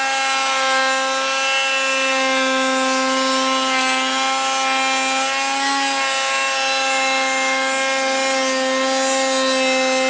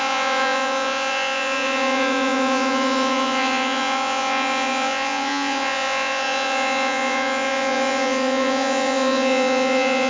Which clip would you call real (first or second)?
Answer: first